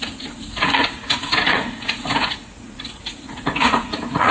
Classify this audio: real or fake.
fake